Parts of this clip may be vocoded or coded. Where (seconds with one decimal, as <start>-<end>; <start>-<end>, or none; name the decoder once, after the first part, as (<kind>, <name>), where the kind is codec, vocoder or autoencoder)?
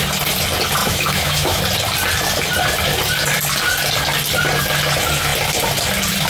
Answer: 0.8-1.6 (autoencoder, DAC-VAE)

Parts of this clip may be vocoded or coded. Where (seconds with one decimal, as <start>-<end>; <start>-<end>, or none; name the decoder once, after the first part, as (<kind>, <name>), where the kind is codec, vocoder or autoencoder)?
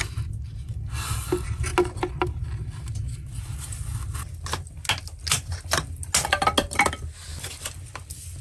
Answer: none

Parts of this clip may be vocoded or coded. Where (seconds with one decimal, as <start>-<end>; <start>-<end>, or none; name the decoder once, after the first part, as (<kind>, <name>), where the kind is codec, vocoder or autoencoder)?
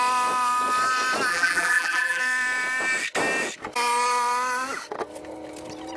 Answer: 1.3-2.2 (vocoder, BigVGAN v2)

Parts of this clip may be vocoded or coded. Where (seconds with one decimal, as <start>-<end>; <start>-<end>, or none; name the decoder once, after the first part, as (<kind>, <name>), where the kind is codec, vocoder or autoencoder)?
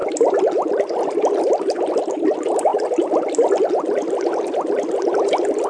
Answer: none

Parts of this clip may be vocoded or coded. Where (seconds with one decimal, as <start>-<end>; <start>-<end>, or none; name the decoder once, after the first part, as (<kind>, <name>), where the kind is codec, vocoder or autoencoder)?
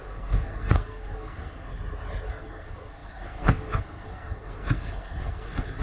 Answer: 0.0-1.7 (codec, SNAC); 2.3-5.8